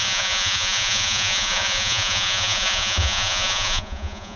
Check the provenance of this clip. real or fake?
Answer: fake